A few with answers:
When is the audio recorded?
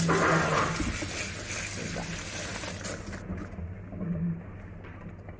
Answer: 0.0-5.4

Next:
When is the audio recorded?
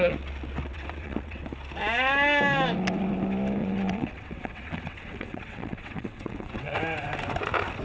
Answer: 0.0-0.6; 1.4-3.6; 6.8-7.8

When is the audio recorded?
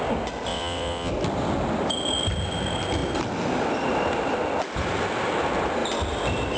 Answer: 0.0-0.5; 1.1-6.6